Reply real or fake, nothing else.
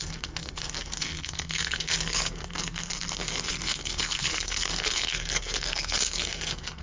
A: fake